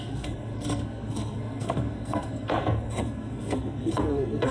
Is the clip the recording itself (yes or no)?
no